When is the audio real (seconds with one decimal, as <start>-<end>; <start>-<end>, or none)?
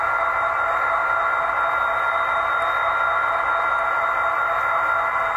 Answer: 0.0-5.4